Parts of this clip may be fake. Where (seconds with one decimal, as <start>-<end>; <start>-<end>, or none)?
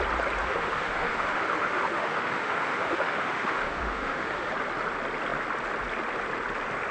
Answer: 0.4-4.5